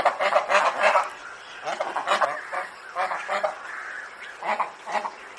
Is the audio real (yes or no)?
yes